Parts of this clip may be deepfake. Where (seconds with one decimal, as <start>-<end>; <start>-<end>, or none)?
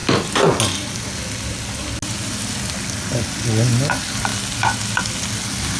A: none